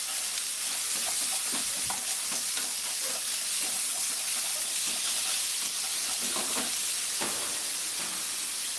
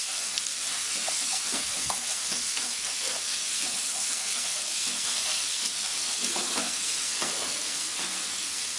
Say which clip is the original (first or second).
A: first